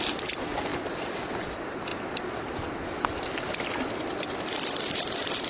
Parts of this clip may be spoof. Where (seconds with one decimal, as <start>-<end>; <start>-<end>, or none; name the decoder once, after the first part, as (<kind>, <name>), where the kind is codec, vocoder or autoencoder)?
none